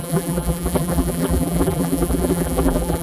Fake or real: fake